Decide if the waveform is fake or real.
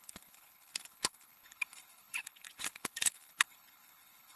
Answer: fake